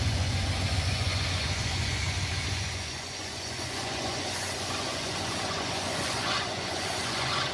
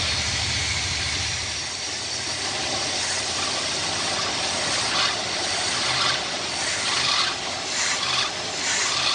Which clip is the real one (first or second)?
second